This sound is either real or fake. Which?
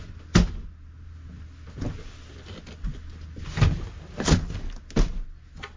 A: real